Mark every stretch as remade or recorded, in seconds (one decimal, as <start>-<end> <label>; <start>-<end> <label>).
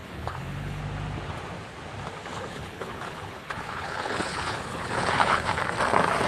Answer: 0.0-0.8 remade; 0.8-2.5 recorded; 2.5-5.6 remade; 5.6-6.3 recorded